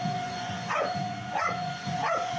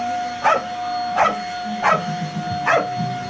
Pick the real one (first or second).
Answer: second